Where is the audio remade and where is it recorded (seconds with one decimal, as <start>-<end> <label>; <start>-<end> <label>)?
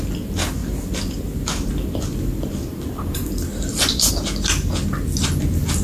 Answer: 0.0-0.6 recorded; 0.6-4.1 remade; 4.1-5.8 recorded